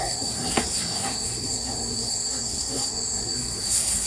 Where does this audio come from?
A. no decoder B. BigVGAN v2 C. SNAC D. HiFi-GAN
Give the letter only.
C